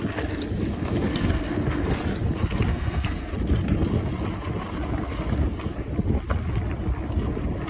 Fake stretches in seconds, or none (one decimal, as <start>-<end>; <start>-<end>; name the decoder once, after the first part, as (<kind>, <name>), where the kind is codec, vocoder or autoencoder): 0.7-2.0 (codec, SNAC); 2.7-3.3